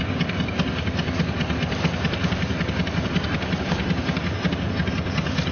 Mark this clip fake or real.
real